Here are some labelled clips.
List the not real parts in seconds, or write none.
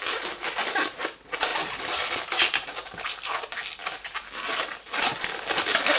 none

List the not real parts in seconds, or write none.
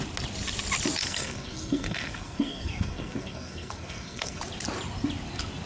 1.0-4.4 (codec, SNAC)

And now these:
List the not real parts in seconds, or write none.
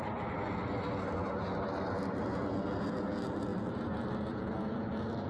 none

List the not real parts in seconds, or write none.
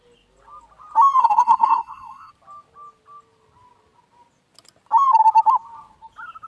1.2-2.3 (codec, SNAC)